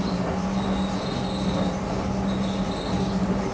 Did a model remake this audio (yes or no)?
no